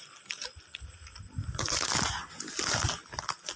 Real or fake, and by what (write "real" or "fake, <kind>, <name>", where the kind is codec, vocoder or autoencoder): real